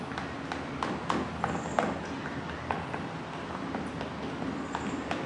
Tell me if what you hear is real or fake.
real